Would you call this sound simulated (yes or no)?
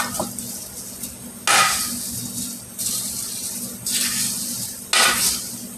no